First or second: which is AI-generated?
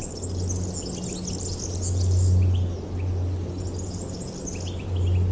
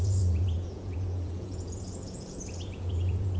second